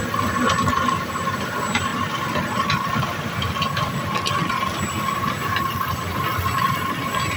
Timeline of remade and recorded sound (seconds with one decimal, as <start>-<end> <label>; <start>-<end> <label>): 0.0-1.9 recorded; 1.9-3.5 remade; 3.5-7.4 recorded